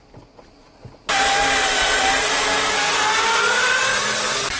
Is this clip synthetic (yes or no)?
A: no